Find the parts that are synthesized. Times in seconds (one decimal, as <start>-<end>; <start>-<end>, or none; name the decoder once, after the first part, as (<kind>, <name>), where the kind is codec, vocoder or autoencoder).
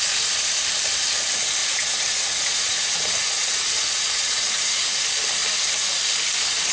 1.6-5.0 (vocoder, Vocos)